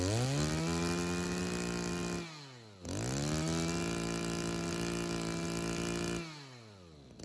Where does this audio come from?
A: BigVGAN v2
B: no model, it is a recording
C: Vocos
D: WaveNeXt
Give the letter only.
B